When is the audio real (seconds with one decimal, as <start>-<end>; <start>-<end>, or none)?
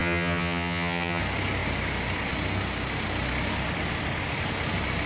1.2-5.1